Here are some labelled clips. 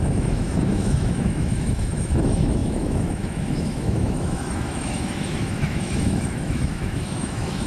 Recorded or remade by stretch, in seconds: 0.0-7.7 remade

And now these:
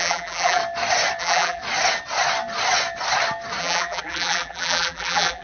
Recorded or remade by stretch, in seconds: 0.0-0.6 remade; 0.6-1.2 recorded; 1.2-1.6 remade; 1.6-3.6 recorded; 3.6-5.4 remade

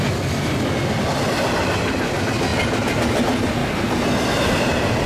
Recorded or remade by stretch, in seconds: 0.0-5.1 recorded